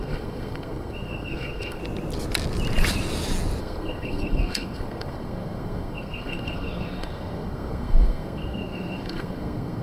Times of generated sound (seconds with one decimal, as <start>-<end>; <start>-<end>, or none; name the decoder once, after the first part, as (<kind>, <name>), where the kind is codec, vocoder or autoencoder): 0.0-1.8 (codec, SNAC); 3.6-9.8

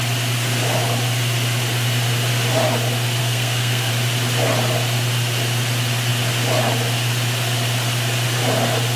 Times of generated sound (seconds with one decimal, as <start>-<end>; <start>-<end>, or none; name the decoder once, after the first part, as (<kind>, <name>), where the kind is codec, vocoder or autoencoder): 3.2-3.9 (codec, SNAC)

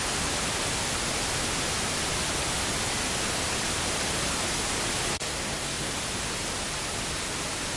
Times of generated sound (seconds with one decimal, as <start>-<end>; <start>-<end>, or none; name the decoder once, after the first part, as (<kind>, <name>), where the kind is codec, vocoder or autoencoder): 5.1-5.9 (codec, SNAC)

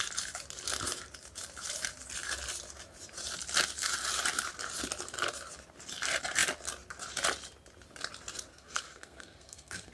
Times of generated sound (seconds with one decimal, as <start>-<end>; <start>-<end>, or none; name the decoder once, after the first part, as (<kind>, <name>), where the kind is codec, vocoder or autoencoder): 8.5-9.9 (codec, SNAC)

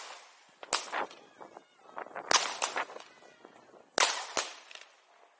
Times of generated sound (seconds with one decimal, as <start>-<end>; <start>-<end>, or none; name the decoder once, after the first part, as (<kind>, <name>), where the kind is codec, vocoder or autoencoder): none

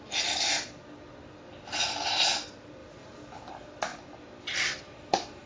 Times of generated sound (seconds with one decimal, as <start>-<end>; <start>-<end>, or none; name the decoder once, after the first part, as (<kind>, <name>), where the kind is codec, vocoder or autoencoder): none